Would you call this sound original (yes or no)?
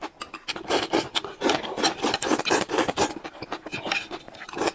yes